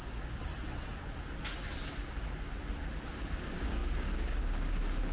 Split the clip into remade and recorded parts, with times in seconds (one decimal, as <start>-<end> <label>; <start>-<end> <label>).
0.0-0.4 remade; 0.4-3.2 recorded; 3.2-5.1 remade